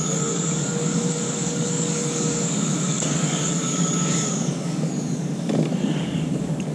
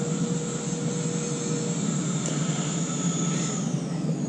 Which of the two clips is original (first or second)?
second